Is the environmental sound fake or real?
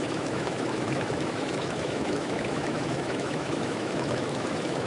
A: fake